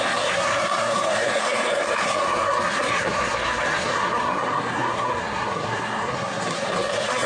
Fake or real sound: fake